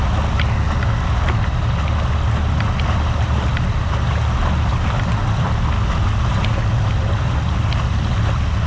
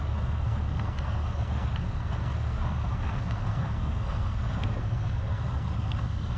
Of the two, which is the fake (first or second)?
second